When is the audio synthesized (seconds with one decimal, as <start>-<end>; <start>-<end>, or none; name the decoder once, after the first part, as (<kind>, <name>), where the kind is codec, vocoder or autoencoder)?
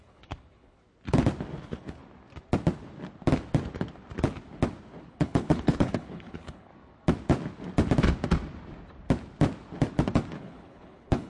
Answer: 0.0-0.8 (codec, HILCodec); 1.6-2.0; 5.1-6.7; 10.4-11.3